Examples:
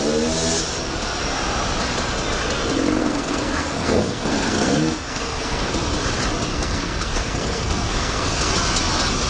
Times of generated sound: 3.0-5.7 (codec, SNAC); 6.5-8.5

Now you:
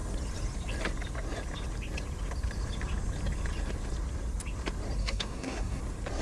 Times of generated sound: 5.0-5.8 (codec, SNAC)

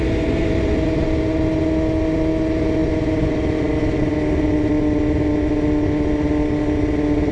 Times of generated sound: none